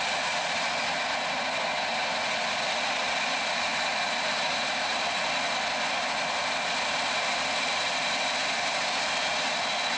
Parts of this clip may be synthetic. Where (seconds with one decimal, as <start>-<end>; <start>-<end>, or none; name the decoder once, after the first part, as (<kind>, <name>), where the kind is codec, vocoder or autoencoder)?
none